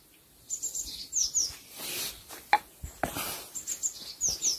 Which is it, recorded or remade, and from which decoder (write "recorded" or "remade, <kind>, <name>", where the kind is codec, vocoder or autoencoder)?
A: recorded